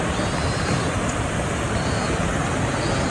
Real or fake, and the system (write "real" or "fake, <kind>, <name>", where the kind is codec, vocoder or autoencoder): real